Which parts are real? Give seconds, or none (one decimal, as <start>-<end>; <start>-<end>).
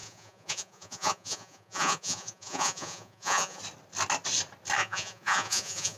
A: 3.6-4.8